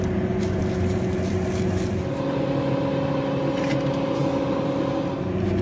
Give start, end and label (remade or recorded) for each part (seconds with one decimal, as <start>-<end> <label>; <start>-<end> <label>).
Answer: 0.0-5.6 recorded